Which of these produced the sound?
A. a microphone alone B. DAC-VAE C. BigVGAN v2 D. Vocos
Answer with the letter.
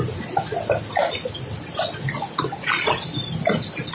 A